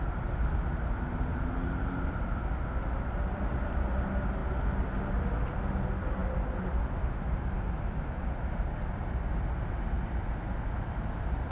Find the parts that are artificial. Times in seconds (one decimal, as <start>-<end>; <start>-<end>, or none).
6.2-6.8

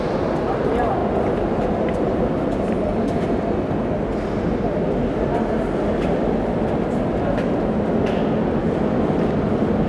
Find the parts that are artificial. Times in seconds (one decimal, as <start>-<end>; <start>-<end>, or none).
1.0-3.7

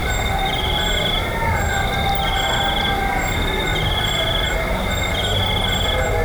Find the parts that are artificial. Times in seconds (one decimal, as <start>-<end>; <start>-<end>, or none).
0.0-2.1; 3.7-4.9

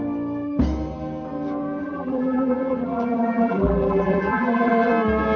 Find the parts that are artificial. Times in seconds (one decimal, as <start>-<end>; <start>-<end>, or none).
1.8-4.9

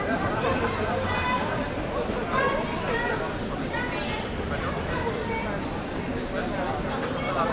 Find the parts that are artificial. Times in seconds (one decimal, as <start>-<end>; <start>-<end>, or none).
0.5-1.6

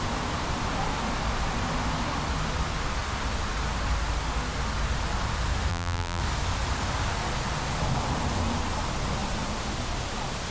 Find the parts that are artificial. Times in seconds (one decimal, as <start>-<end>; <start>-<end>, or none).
5.7-6.2

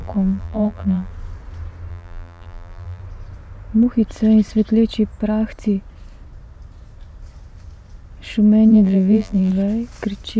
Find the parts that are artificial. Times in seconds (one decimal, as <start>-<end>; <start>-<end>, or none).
0.0-1.1; 1.9-3.0; 8.7-9.5